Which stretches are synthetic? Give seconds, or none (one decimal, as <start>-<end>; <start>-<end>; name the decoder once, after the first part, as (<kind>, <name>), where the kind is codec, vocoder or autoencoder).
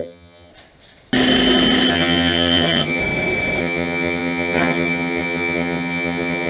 0.0-0.5 (vocoder, HiFi-GAN); 1.9-3.0; 3.6-6.5